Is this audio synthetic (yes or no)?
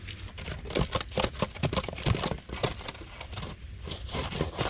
no